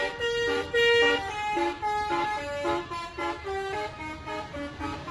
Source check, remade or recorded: recorded